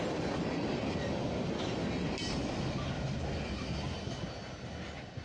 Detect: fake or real real